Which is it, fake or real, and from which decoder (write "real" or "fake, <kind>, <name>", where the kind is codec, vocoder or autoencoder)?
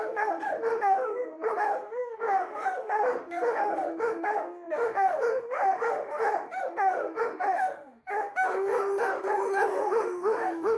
fake, autoencoder, DAC-VAE